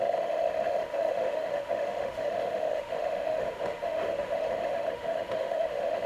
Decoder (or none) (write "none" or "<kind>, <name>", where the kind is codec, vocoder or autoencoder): autoencoder, DAC-VAE